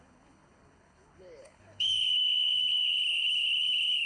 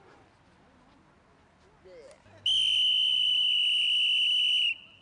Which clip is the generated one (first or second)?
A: first